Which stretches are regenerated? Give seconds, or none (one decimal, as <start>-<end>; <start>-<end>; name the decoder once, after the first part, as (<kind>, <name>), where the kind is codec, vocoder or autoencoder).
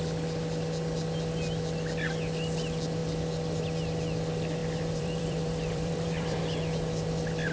4.6-6.4 (vocoder, BigVGAN v2)